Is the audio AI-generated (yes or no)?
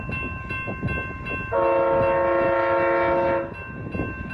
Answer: no